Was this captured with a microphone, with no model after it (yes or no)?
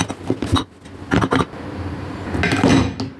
yes